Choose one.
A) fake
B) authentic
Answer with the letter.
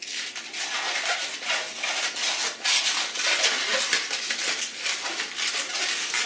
B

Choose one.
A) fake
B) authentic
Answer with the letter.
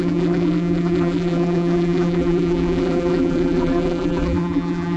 A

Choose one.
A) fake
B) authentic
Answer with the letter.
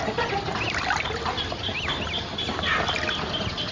B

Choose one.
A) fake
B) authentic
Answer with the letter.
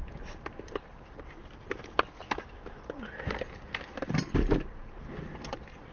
B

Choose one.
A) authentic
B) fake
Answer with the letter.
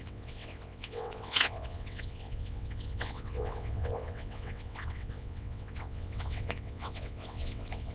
B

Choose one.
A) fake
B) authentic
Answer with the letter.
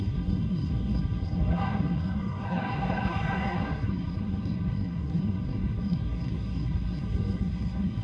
A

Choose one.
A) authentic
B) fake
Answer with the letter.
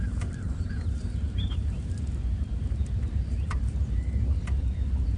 B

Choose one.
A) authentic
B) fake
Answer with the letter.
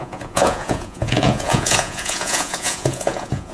B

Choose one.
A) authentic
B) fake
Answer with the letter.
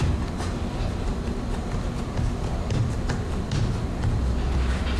A